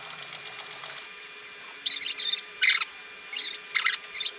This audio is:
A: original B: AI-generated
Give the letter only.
A